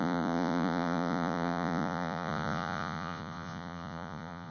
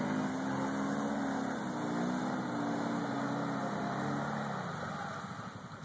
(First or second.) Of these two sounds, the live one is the second